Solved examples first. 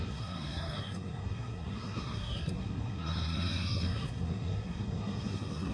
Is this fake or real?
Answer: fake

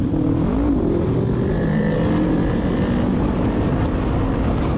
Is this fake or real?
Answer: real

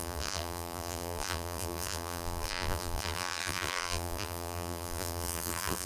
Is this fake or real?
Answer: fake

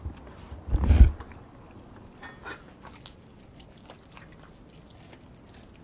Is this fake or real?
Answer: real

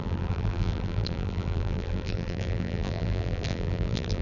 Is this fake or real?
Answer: fake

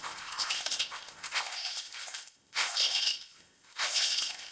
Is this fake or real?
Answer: fake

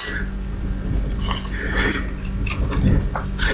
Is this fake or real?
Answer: real